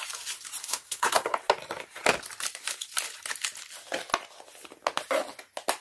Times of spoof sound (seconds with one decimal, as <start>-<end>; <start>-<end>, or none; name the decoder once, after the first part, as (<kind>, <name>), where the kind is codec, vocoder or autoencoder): 0.6-1.3 (codec, SNAC)